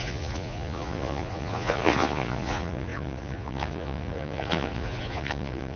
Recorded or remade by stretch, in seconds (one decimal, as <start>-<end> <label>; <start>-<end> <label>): 0.0-5.8 remade